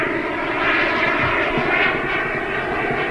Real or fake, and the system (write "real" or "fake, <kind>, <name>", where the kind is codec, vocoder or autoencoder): real